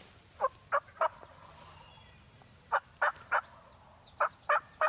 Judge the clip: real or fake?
real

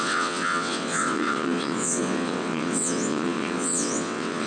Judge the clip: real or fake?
fake